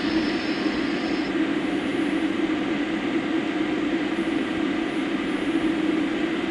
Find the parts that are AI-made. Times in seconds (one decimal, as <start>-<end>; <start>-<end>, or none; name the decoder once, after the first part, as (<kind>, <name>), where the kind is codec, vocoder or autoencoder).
none